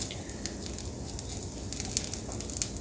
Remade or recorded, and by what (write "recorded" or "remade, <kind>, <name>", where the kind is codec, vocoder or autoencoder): recorded